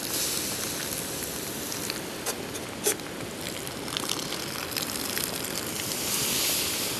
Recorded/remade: recorded